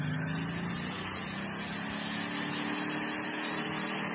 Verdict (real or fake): real